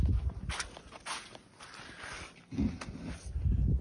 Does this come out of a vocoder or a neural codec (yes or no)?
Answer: no